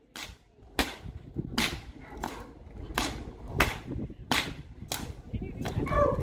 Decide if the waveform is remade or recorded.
recorded